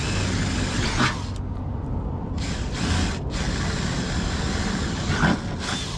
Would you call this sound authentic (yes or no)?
yes